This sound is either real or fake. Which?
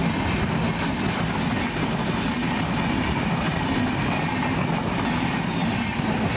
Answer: real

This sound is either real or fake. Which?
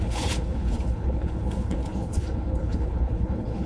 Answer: fake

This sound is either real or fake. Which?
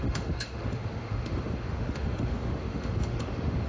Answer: fake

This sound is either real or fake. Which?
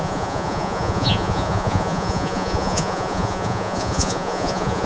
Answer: fake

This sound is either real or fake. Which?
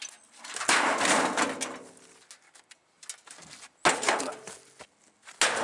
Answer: real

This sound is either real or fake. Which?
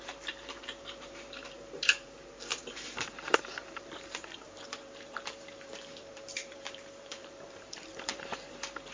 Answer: fake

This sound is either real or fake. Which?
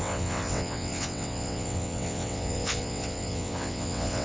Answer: fake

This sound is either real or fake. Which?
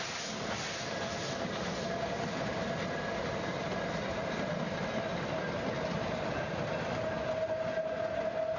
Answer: real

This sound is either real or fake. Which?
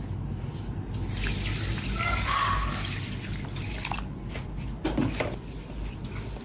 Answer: real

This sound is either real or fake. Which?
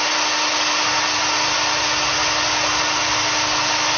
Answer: real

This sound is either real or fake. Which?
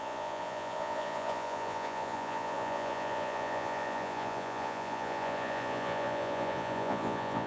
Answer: fake